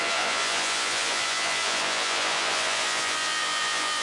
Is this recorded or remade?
remade